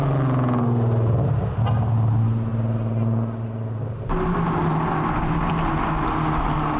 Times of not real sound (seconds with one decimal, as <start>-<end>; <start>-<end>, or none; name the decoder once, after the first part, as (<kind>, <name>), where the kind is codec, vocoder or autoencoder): none